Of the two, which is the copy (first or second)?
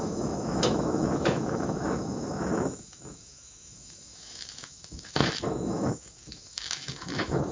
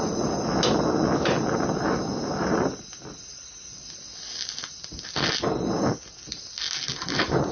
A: first